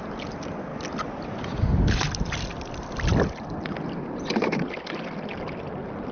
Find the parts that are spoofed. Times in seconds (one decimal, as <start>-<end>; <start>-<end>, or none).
none